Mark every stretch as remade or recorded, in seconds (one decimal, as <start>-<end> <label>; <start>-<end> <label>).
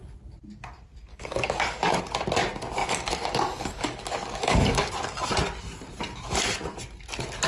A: 0.0-1.1 recorded; 1.1-2.0 remade; 2.0-2.8 recorded; 2.8-4.9 remade; 4.9-7.5 recorded